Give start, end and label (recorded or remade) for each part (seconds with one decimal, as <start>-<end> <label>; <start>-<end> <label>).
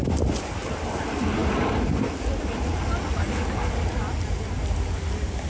0.0-5.5 recorded